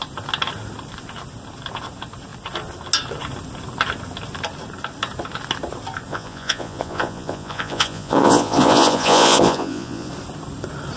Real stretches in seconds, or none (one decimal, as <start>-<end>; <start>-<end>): 0.0-6.1; 10.1-11.0